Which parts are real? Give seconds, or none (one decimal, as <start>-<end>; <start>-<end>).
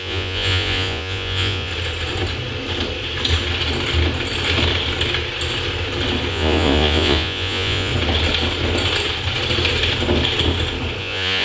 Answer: 1.7-6.3; 7.9-11.0